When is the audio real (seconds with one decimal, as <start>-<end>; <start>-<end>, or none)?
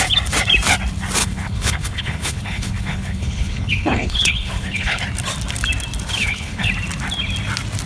0.0-1.2; 5.0-6.2; 6.7-7.9